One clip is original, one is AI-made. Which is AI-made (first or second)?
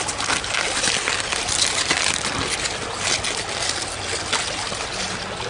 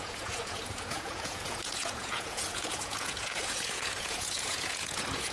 second